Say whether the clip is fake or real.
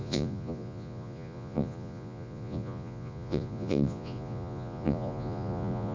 fake